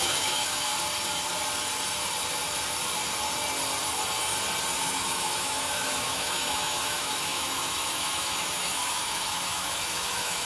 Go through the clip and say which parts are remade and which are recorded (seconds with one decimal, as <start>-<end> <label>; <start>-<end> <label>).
0.0-0.7 remade; 0.7-4.8 recorded; 4.8-10.5 remade